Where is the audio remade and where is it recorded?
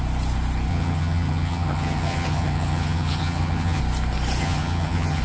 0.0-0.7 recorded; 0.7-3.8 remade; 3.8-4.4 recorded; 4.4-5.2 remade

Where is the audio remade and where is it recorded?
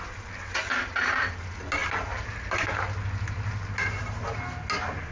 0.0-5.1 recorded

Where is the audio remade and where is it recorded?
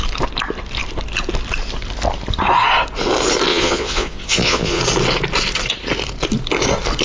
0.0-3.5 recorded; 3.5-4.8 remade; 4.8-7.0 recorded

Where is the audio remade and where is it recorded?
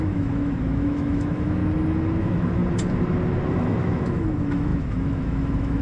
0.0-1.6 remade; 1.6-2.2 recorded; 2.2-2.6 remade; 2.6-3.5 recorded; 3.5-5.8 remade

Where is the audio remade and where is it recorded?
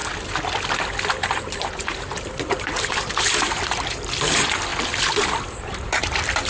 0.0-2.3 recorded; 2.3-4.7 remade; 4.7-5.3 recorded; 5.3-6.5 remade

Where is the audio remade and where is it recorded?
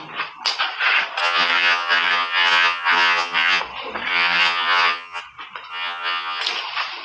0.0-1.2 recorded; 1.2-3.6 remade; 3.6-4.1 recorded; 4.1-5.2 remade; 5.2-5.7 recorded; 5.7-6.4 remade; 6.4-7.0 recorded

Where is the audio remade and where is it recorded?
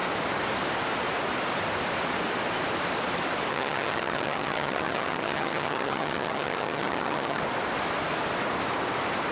0.0-3.5 recorded; 3.5-7.4 remade; 7.4-9.3 recorded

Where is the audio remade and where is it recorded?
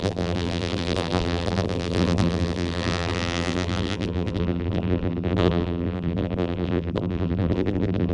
0.0-8.1 remade